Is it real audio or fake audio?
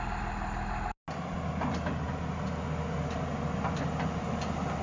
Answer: real